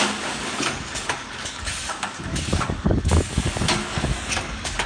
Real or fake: fake